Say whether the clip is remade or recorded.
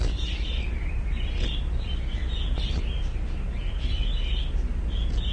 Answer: recorded